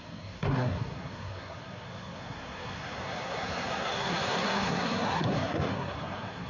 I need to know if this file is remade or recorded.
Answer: remade